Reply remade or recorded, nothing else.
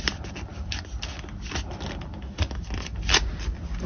recorded